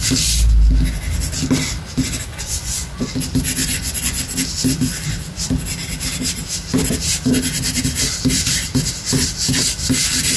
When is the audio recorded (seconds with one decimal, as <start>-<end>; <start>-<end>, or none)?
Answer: 0.0-2.3; 3.1-3.6; 4.2-10.4